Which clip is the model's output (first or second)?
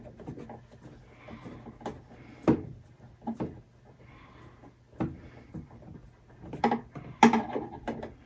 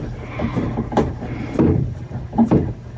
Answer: second